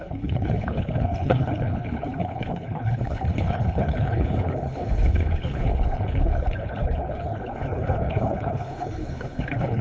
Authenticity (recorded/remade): remade